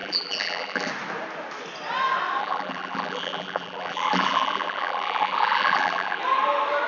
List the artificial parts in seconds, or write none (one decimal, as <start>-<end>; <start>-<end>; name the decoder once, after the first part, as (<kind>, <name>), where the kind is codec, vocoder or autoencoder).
0.0-0.9 (vocoder, BigVGAN v2); 2.4-6.2